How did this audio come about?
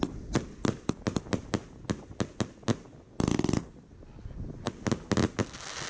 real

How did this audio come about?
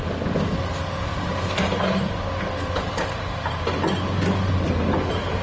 real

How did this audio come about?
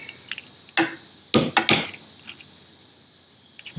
real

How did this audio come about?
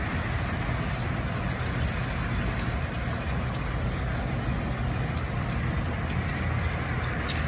real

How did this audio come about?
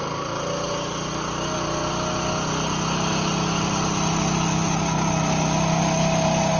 real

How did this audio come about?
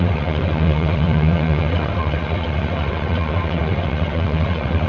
fake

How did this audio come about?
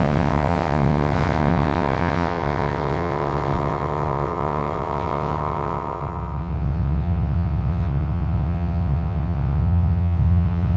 fake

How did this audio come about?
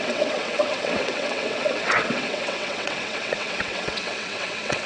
fake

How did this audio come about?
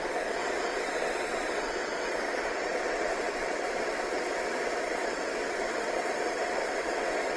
fake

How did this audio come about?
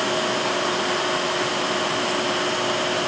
real